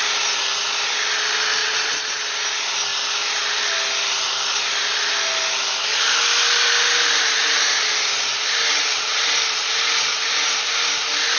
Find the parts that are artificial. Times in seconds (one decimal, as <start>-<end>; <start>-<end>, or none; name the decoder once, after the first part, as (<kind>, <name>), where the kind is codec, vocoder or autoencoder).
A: 1.6-2.1 (vocoder, WaveNeXt); 8.7-9.2